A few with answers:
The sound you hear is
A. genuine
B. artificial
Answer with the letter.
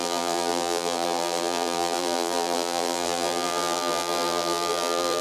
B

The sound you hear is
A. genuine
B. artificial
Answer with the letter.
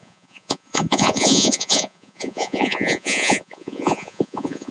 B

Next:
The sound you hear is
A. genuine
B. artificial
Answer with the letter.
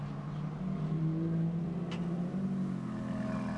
A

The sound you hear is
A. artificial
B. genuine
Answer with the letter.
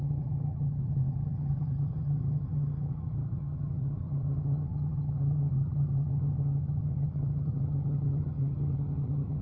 A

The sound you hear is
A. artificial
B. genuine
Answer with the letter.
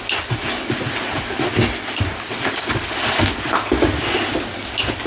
B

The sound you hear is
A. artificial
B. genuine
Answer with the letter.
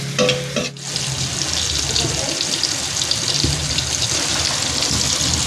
B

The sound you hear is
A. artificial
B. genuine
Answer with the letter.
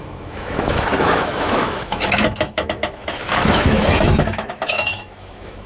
A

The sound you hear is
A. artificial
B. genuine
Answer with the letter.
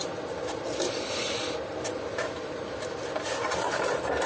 B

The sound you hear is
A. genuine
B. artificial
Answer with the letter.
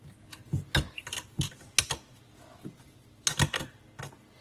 A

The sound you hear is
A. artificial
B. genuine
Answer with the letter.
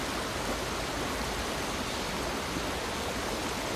B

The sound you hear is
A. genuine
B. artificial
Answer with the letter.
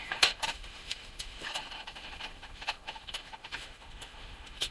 B